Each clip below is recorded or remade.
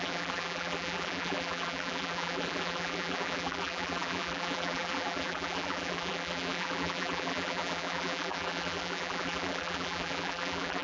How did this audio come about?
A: remade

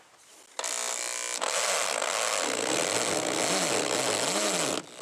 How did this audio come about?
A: recorded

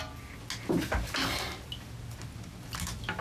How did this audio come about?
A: recorded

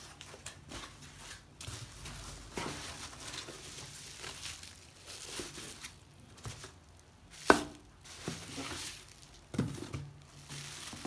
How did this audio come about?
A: recorded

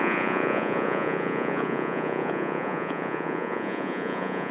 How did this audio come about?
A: remade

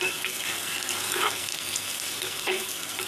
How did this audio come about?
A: remade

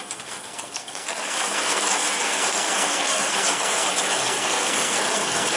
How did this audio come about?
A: remade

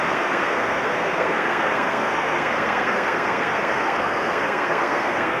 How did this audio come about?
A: remade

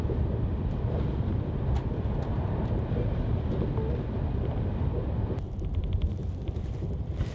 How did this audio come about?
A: recorded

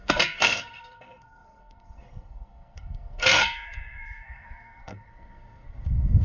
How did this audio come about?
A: remade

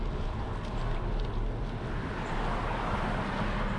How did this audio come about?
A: recorded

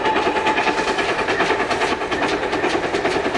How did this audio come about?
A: recorded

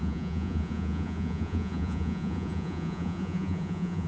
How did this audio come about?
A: remade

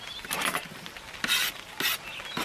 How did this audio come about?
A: recorded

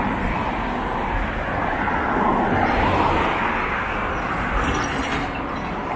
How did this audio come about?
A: recorded